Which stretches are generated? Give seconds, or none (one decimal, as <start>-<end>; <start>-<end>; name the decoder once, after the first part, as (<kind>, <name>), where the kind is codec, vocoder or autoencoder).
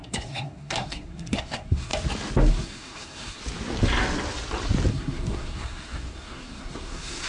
0.0-1.9 (codec, SNAC); 2.5-3.4; 4.9-7.3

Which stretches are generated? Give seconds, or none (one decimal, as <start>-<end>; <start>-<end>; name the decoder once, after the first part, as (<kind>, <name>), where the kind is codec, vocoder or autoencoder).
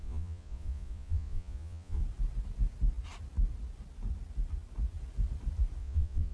0.0-2.0 (vocoder, Vocos); 5.8-6.3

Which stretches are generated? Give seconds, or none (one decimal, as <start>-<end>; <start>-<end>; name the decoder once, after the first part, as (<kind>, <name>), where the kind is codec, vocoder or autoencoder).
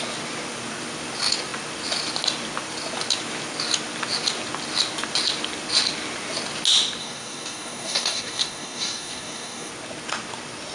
7.0-9.7 (codec, DAC)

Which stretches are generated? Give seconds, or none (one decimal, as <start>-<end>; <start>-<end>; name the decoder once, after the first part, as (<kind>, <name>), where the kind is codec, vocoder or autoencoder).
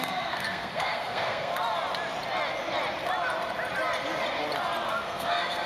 0.0-1.5 (codec, SNAC); 4.9-5.7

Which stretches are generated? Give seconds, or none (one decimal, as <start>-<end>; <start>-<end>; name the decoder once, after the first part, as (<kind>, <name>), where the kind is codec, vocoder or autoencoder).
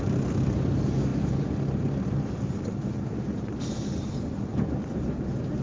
none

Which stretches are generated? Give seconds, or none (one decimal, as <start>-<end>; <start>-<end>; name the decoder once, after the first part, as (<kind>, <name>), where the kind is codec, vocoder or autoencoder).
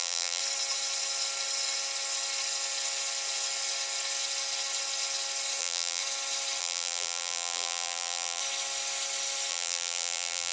0.0-0.4 (vocoder, BigVGAN v2); 5.6-6.0; 6.6-8.4; 9.5-10.5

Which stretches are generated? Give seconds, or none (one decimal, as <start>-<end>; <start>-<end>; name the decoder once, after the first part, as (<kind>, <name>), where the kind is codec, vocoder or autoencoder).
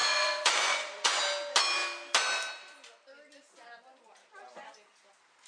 0.0-1.2 (vocoder, Vocos)